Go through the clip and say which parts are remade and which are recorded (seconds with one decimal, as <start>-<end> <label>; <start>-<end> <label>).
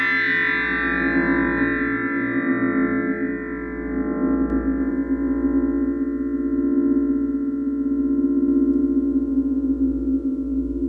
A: 0.0-10.9 recorded